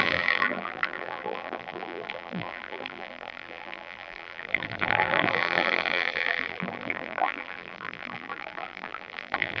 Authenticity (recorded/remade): remade